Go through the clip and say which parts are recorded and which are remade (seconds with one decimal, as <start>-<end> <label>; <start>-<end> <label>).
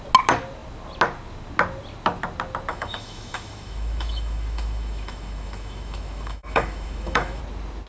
0.0-2.7 recorded; 2.7-7.4 remade; 7.4-7.9 recorded